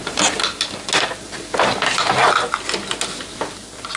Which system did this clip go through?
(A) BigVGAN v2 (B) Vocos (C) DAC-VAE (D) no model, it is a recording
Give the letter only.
D